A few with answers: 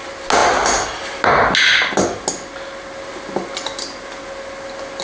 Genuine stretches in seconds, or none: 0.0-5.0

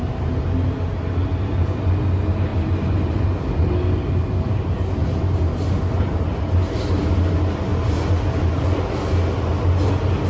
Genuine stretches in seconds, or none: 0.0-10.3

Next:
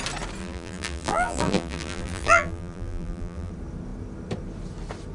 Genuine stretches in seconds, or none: 0.0-0.4; 3.5-5.1